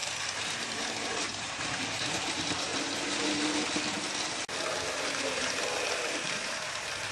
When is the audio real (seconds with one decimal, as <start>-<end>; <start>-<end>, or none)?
2.7-4.9